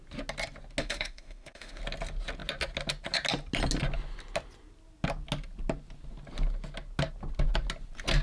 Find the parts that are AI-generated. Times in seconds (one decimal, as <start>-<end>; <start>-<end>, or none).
0.8-1.8